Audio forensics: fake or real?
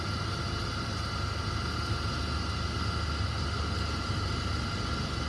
real